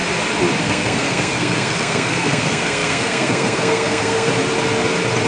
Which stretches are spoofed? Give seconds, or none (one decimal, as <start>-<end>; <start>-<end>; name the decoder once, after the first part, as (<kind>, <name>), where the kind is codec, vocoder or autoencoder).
0.6-4.3 (codec, SNAC)